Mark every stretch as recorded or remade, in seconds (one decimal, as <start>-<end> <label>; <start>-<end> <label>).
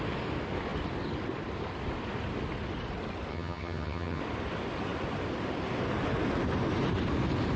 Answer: 0.0-3.3 recorded; 3.3-4.2 remade; 4.2-7.6 recorded